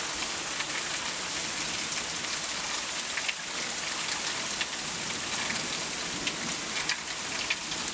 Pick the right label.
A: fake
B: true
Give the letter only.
B